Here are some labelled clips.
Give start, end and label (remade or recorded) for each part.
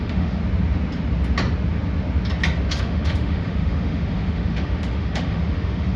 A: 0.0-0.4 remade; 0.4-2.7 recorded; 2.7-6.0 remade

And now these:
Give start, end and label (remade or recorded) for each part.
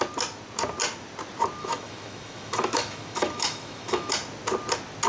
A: 0.0-1.6 recorded; 1.6-4.1 remade; 4.1-5.1 recorded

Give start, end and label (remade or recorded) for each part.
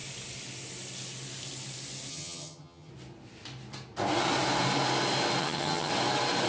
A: 0.0-2.1 recorded; 2.1-2.9 remade; 2.9-5.4 recorded; 5.4-5.9 remade; 5.9-6.5 recorded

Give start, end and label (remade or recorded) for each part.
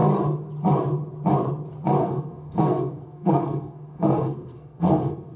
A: 0.0-2.0 recorded; 2.0-5.4 remade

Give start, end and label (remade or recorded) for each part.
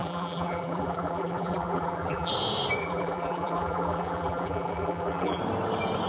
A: 0.0-2.3 remade; 2.3-2.8 recorded; 2.8-5.4 remade; 5.4-6.1 recorded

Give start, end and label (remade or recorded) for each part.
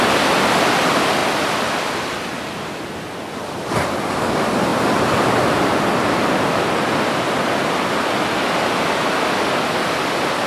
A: 0.0-1.2 recorded; 1.2-1.9 remade; 1.9-4.7 recorded; 4.7-7.1 remade; 7.1-10.5 recorded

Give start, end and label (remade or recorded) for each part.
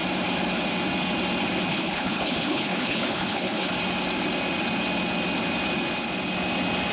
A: 0.0-1.7 recorded; 1.7-3.7 remade; 3.7-6.9 recorded